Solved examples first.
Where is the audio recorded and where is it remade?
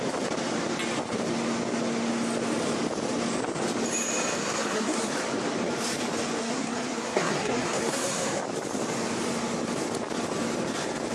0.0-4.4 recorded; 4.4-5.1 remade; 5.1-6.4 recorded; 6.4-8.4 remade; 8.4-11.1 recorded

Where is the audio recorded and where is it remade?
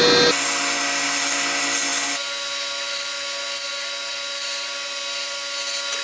0.0-6.0 recorded